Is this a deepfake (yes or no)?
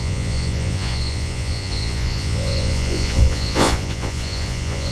yes